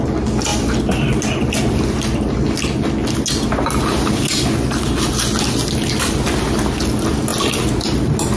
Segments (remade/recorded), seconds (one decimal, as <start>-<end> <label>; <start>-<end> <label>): 0.0-8.4 recorded

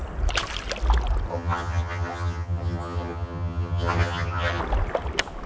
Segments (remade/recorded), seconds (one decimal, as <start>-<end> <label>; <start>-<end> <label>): 0.0-1.3 recorded; 1.3-4.6 remade; 4.6-5.5 recorded

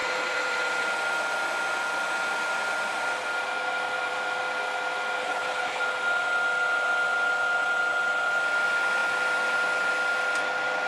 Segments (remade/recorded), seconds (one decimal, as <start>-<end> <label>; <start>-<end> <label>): 0.0-5.2 recorded; 5.2-5.8 remade; 5.8-10.9 recorded

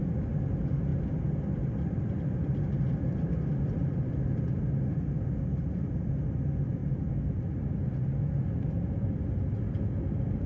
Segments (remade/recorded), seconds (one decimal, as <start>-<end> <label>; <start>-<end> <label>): 0.0-0.9 recorded; 0.9-4.4 remade; 4.4-5.5 recorded; 5.5-6.1 remade; 6.1-6.8 recorded; 6.8-7.4 remade; 7.4-10.5 recorded

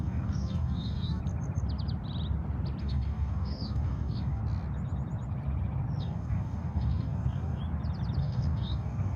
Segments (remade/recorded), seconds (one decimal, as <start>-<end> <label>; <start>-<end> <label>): 0.0-1.2 remade; 1.2-2.8 recorded; 2.8-4.4 remade; 4.4-6.0 recorded; 6.0-7.6 remade; 7.6-8.2 recorded; 8.2-9.2 remade

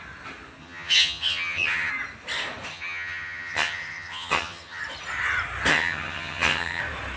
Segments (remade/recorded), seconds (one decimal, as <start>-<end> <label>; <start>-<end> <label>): 0.0-0.6 recorded; 0.6-1.9 remade; 1.9-2.7 recorded; 2.7-4.8 remade; 4.8-5.7 recorded; 5.7-6.8 remade; 6.8-7.2 recorded

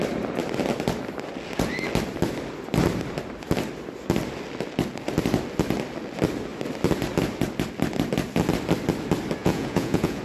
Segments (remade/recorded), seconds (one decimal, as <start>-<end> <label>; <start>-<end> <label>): 0.0-9.4 recorded; 9.4-10.2 remade